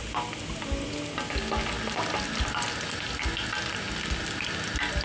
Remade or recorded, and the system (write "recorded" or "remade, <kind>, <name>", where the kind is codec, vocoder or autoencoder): recorded